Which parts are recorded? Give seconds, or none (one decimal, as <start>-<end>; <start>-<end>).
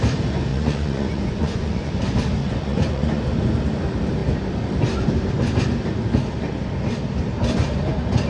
0.0-0.5; 2.0-2.4; 3.2-8.3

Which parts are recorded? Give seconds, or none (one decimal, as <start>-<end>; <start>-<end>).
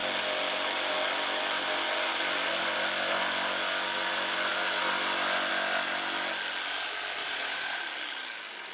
0.0-7.2; 7.8-8.7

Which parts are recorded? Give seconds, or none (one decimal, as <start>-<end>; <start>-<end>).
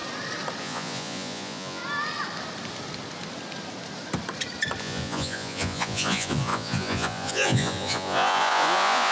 0.0-0.6; 1.8-4.8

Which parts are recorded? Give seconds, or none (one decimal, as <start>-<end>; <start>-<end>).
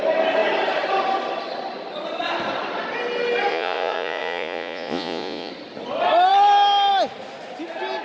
0.0-3.5; 5.5-8.0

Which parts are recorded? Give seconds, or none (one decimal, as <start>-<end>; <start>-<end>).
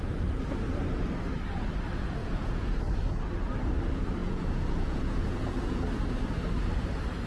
0.0-2.2; 2.8-4.2; 5.8-7.3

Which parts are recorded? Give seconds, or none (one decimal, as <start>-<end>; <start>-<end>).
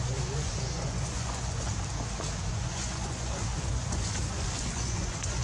1.7-2.5